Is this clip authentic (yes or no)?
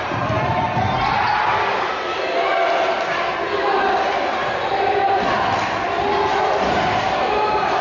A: yes